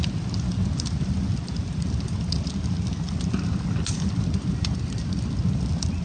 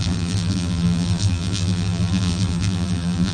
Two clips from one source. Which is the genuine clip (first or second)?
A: first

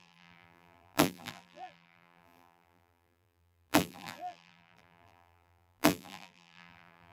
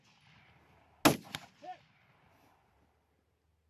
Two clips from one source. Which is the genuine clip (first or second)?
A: second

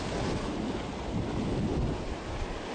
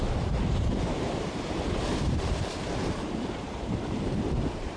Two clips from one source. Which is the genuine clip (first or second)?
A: first